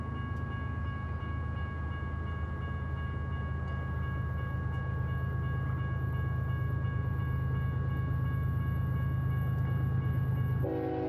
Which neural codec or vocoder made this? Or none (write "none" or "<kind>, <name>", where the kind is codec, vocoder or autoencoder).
none